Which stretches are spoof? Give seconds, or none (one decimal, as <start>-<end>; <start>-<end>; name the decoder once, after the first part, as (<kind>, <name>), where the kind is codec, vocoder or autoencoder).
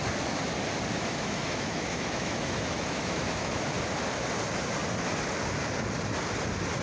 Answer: 0.9-3.6 (autoencoder, DAC-VAE)